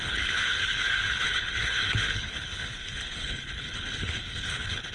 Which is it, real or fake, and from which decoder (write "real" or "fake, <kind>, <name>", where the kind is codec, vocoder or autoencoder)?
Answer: fake, codec, HILCodec